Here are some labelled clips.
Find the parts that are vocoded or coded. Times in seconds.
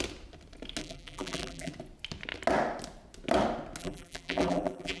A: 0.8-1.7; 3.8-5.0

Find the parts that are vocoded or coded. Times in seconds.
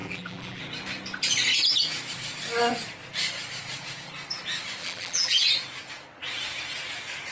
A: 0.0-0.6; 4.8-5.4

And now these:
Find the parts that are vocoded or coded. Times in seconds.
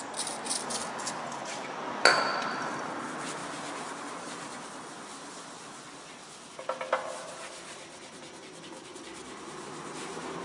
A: 3.4-4.8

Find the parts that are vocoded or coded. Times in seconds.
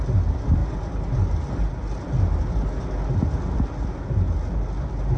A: none